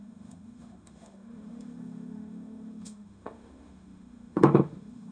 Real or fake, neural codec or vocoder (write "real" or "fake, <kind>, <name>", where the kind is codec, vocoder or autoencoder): fake, autoencoder, DAC-VAE